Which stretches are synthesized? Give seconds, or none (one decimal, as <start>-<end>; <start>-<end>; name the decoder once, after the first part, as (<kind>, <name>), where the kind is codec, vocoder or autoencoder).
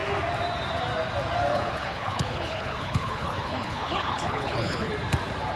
1.5-4.9 (codec, HILCodec)